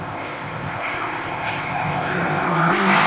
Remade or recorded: remade